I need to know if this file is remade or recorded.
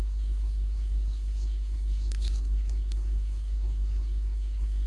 remade